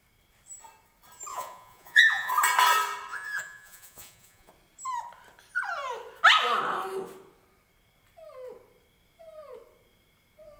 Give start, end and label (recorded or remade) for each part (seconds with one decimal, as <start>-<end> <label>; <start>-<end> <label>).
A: 0.0-1.3 recorded; 1.3-2.3 remade; 2.3-3.1 recorded; 3.1-4.5 remade; 4.5-10.6 recorded